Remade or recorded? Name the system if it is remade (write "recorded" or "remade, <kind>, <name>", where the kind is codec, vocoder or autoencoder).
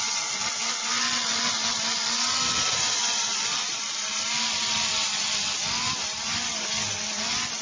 recorded